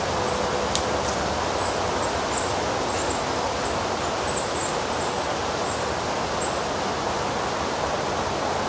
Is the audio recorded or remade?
recorded